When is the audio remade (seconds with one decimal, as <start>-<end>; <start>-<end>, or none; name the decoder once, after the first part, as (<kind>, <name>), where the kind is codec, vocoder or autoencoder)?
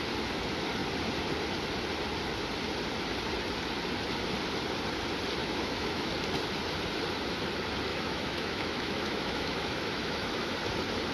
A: 5.4-6.1 (autoencoder, DAC-VAE); 7.9-10.5